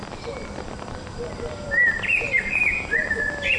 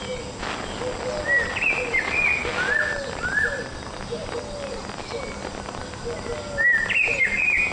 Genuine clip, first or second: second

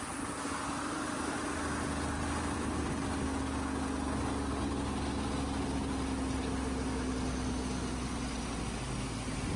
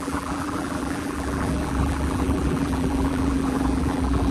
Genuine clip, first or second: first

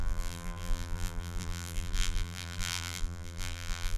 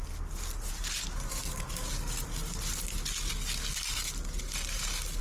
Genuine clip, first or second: second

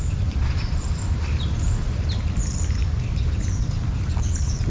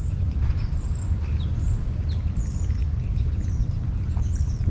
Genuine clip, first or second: second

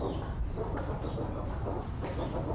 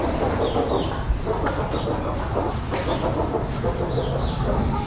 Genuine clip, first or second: second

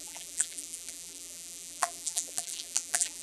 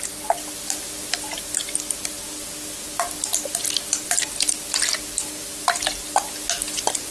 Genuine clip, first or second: second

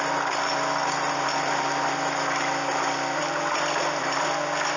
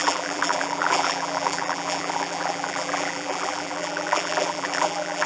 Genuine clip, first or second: first